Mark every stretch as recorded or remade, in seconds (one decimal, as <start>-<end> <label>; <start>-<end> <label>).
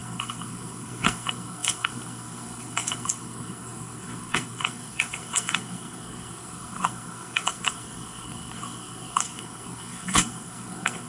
0.0-11.1 remade